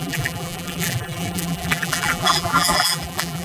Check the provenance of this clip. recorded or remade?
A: remade